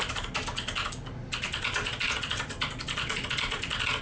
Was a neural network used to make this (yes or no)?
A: no